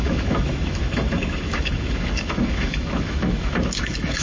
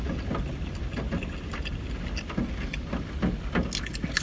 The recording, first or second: second